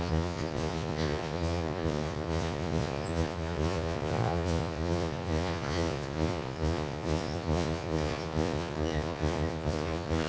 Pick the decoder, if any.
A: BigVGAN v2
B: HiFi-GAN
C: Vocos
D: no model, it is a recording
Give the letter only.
C